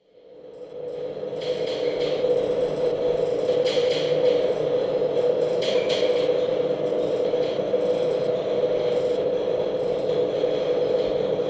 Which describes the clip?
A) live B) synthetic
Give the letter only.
A